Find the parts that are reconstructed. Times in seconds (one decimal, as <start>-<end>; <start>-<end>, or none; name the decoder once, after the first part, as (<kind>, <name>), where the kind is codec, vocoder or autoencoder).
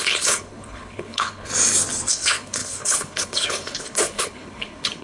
0.0-1.5 (codec, HILCodec); 2.1-5.0